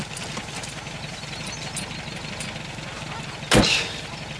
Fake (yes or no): no